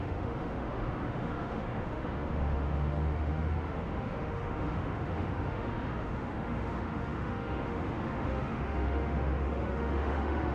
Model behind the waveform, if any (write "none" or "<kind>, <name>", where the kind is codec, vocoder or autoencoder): autoencoder, DAC-VAE